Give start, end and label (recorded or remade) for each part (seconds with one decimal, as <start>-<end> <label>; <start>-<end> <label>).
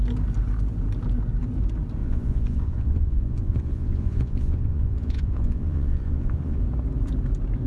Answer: 0.0-2.0 recorded; 2.0-6.6 remade; 6.6-7.7 recorded